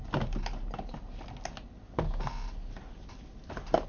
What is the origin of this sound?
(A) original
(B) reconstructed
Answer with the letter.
A